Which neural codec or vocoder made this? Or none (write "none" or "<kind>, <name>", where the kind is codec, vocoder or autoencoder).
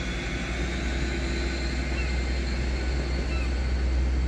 none